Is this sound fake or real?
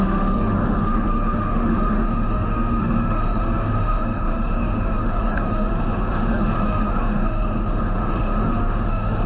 fake